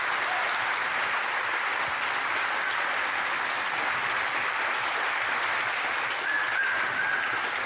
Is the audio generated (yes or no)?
no